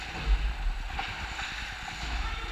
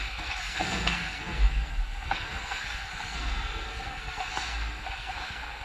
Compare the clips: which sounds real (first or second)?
first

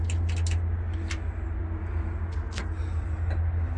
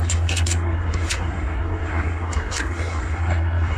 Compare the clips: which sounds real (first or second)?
first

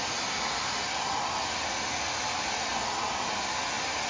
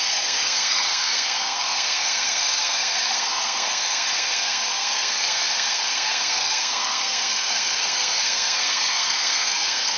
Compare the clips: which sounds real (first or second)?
first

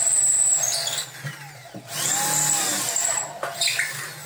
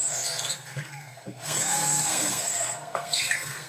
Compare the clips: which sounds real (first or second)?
first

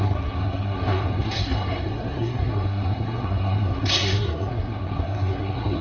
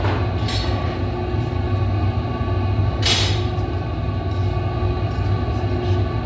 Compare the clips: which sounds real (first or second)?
second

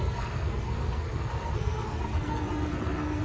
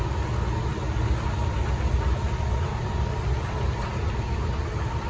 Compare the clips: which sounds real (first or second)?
second